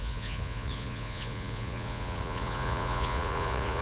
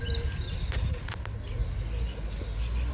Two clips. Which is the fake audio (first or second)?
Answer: first